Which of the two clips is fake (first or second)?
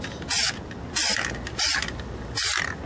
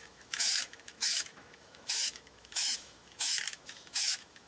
second